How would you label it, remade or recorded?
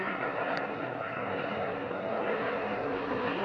remade